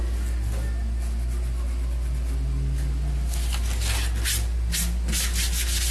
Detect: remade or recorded recorded